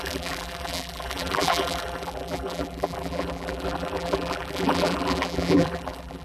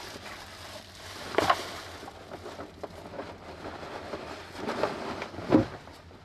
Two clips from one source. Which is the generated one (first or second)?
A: first